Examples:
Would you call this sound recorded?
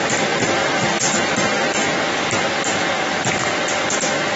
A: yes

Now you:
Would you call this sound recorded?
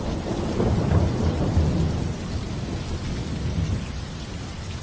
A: yes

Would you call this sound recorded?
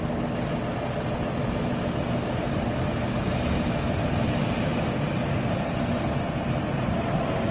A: yes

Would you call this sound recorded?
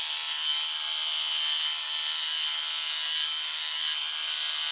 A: yes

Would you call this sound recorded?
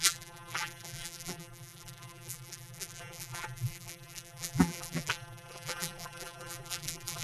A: no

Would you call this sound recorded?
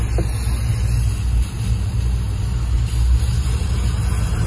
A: yes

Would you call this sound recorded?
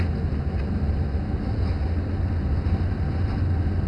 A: yes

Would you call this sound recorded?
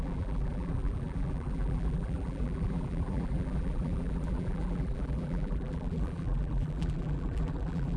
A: no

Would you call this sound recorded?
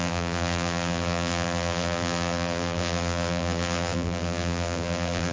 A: no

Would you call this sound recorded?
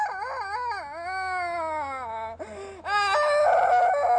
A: yes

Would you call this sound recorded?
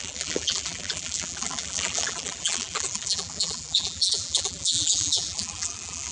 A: no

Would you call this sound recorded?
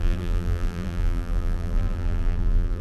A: no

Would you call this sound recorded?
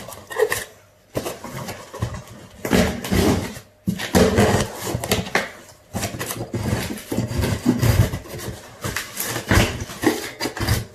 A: yes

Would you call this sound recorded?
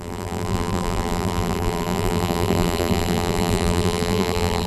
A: no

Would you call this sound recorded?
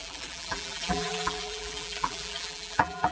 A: no